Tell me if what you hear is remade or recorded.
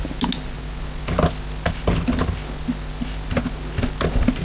recorded